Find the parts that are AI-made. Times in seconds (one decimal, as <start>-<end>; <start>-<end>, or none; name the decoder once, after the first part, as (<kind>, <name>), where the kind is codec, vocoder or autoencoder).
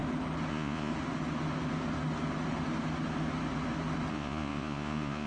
0.5-0.9 (vocoder, Vocos); 4.1-5.3